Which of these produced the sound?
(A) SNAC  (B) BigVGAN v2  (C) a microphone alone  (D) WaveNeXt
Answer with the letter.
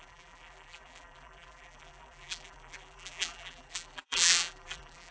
B